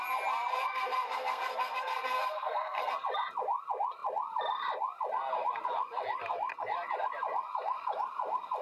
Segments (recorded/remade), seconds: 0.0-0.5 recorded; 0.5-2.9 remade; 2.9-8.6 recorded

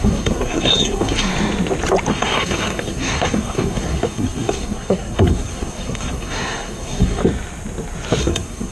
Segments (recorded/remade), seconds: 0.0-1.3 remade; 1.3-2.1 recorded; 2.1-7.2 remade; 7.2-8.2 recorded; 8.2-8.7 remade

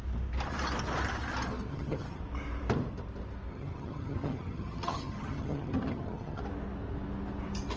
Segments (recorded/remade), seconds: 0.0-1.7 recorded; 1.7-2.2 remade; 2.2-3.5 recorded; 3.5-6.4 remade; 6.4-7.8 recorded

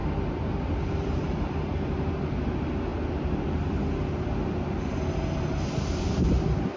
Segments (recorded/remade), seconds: 0.0-6.8 recorded

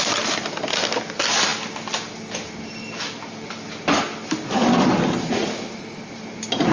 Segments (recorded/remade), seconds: 0.0-6.7 recorded

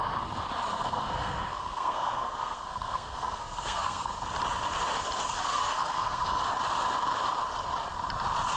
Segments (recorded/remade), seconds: 0.0-0.7 recorded; 0.7-4.1 remade; 4.1-5.4 recorded; 5.4-6.4 remade; 6.4-8.6 recorded